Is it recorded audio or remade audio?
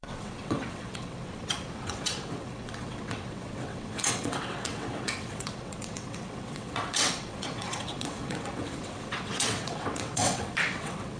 remade